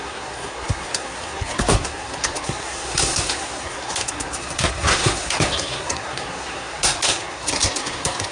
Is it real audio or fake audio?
fake